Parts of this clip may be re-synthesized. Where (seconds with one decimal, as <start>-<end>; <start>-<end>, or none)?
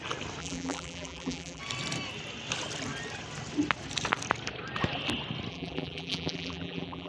0.4-1.6; 5.5-7.1